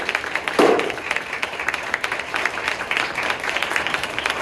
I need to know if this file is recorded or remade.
remade